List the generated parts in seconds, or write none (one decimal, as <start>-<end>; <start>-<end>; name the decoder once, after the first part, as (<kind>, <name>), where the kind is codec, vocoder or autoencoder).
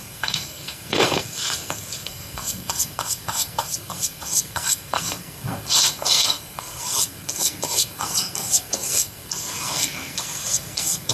0.0-11.1 (codec, SNAC)